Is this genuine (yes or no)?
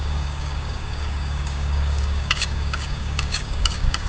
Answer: no